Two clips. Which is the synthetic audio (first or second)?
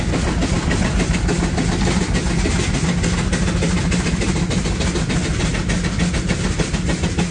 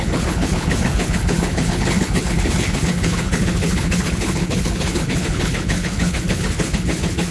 second